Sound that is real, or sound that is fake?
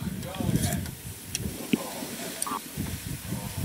fake